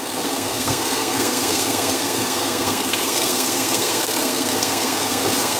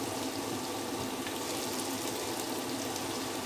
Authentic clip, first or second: second